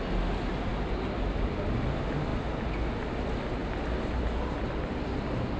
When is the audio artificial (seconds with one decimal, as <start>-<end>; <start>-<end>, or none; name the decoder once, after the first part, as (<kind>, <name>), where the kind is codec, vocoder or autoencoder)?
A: none